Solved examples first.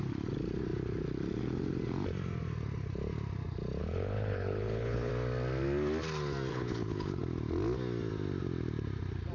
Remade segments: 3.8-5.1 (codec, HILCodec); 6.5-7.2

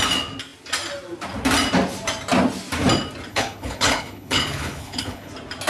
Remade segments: 3.3-5.3 (codec, HILCodec)

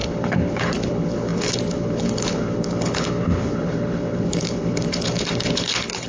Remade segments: 0.0-6.1 (codec, HILCodec)

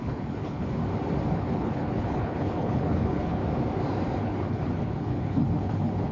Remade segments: 0.0-0.8 (codec, HILCodec); 1.3-3.4; 4.2-6.1

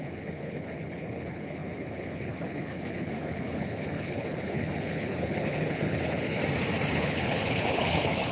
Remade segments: 0.0-6.4 (codec, HILCodec); 7.0-8.3

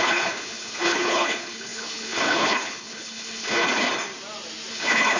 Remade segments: 0.0-3.9 (codec, HILCodec); 4.7-5.2

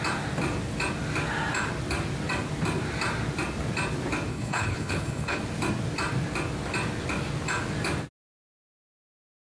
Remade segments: 4.3-5.4 (codec, HILCodec)

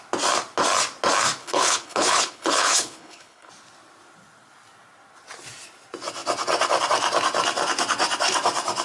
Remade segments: 1.4-3.5 (codec, HILCodec)